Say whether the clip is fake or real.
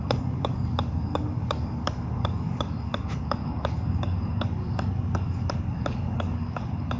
fake